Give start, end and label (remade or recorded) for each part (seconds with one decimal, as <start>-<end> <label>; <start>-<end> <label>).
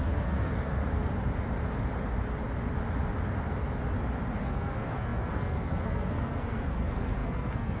0.0-0.8 remade; 0.8-4.4 recorded; 4.4-7.8 remade